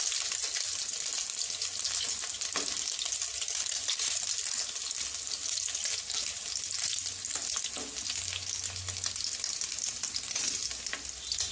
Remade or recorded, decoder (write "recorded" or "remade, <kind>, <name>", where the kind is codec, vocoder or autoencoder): recorded